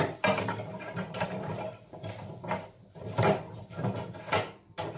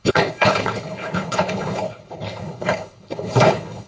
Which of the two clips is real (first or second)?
first